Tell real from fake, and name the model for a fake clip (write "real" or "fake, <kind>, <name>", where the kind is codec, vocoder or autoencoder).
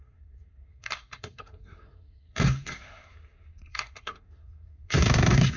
fake, codec, SNAC